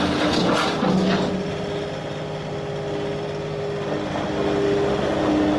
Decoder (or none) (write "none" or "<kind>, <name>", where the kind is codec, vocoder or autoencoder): none